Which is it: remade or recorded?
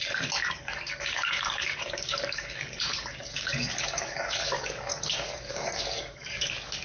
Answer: remade